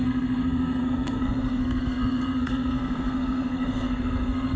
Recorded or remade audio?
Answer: remade